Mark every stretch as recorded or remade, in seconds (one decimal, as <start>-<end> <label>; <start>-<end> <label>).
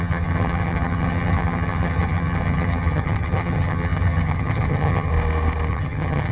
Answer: 0.0-5.1 remade; 5.1-5.7 recorded; 5.7-6.3 remade